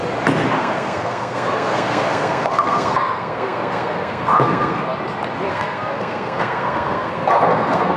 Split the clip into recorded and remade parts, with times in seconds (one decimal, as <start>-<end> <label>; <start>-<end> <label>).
0.0-0.6 recorded; 0.6-4.9 remade; 4.9-5.5 recorded; 5.5-8.0 remade